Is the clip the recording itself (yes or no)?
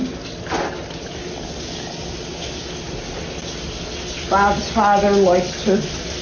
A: yes